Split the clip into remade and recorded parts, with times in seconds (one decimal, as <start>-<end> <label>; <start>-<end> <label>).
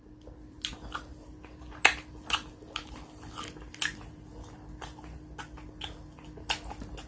0.0-7.1 recorded